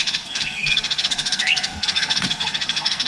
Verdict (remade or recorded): remade